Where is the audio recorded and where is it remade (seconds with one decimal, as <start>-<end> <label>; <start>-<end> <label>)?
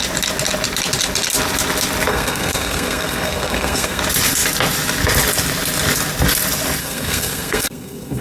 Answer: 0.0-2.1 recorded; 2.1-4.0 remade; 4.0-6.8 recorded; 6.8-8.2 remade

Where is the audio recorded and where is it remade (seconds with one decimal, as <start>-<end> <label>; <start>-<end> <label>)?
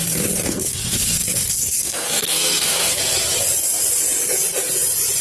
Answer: 0.0-0.4 recorded; 0.4-3.0 remade; 3.0-5.2 recorded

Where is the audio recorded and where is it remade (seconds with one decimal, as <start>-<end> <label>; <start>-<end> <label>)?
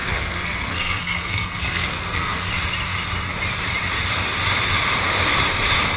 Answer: 0.0-2.5 remade; 2.5-6.0 recorded